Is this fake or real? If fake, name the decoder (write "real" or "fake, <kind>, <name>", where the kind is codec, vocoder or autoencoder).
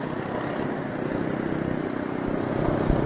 real